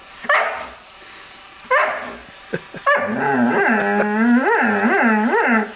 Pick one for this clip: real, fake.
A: real